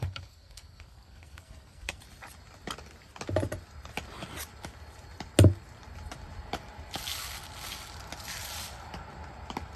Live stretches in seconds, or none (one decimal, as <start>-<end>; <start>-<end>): 2.0-9.8